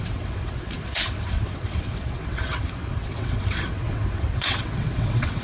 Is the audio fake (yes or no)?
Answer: yes